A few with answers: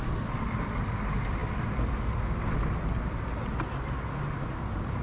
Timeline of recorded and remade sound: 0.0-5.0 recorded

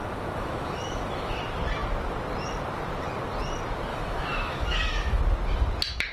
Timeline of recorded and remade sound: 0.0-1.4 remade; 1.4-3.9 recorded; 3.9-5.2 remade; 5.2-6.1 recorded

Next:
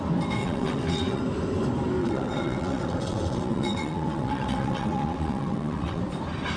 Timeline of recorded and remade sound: 0.0-0.4 recorded; 0.4-1.2 remade; 1.2-2.0 recorded; 2.0-6.0 remade; 6.0-6.6 recorded